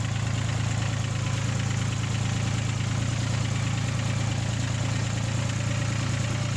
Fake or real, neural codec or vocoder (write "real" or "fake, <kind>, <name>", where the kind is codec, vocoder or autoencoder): real